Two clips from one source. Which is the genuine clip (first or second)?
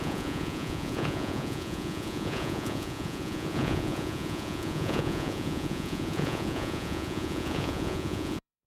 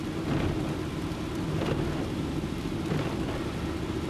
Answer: second